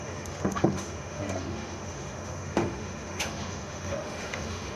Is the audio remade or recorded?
remade